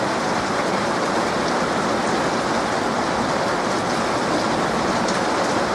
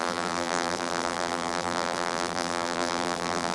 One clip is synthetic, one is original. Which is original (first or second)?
first